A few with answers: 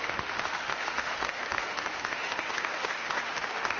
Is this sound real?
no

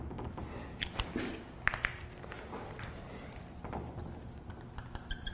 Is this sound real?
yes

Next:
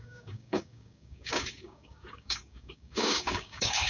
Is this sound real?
no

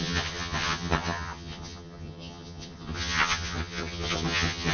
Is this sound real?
no